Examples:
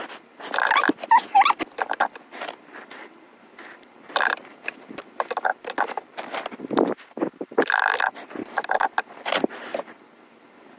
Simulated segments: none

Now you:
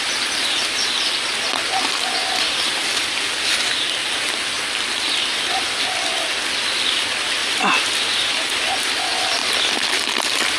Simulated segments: 0.0-4.0 (vocoder, BigVGAN v2); 4.6-7.4; 8.3-10.6

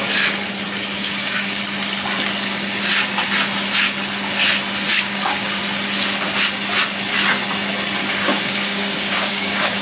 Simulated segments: 0.9-1.6 (codec, DAC); 4.9-5.6; 8.0-9.8

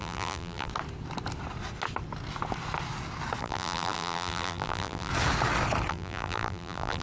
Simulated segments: 0.0-0.7 (vocoder, BigVGAN v2); 3.4-5.1; 5.9-7.0